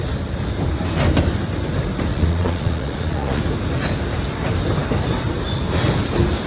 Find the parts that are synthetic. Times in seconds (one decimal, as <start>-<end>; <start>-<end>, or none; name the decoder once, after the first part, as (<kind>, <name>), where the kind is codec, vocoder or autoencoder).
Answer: 2.1-3.4 (vocoder, Vocos)